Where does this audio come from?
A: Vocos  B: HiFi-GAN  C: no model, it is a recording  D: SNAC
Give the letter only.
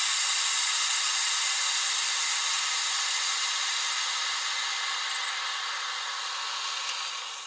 C